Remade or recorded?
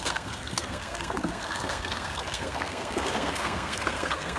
remade